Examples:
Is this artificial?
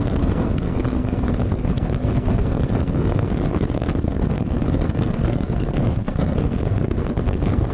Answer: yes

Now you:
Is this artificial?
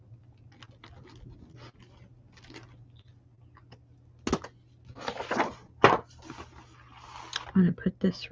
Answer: no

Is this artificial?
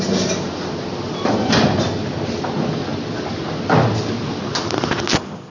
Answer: no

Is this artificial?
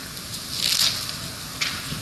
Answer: no